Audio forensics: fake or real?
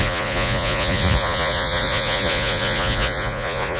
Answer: fake